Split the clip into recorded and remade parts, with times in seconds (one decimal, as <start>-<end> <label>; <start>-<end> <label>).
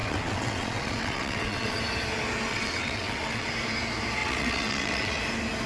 0.0-1.8 remade; 1.8-2.5 recorded; 2.5-3.5 remade; 3.5-4.2 recorded; 4.2-5.2 remade; 5.2-5.7 recorded